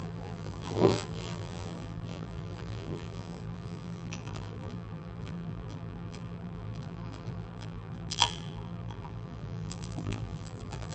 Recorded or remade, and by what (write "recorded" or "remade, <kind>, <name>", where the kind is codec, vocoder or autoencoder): remade, vocoder, BigVGAN v2